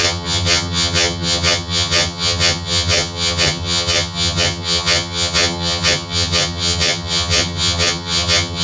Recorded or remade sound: remade